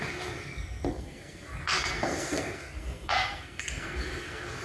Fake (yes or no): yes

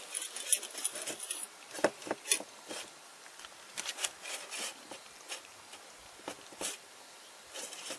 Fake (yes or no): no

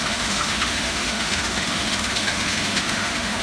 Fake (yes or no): yes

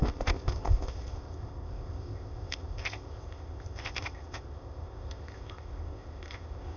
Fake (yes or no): yes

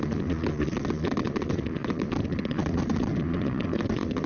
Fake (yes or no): yes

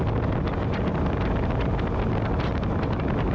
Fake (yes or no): no